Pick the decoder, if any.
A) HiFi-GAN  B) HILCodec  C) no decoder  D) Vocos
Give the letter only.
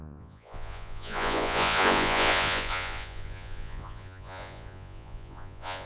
D